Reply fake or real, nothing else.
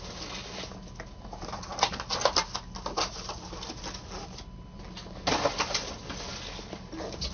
real